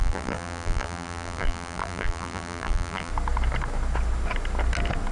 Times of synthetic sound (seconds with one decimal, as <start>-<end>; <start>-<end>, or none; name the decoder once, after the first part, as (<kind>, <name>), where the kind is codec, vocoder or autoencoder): 0.0-3.1 (vocoder, BigVGAN v2)